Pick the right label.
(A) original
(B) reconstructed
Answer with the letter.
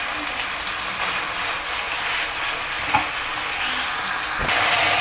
A